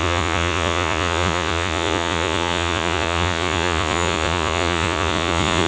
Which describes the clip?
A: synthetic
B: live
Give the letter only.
A